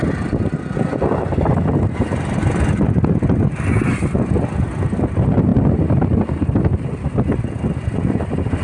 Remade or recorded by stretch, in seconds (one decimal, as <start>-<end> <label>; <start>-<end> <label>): 0.0-8.6 recorded